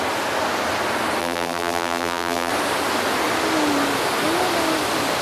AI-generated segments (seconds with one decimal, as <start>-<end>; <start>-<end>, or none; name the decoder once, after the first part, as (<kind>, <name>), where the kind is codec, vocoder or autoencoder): 1.2-2.5 (vocoder, BigVGAN v2)